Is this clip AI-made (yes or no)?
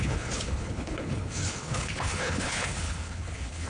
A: yes